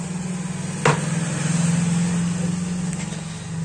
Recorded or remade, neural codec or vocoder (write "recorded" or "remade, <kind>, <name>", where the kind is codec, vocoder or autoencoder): recorded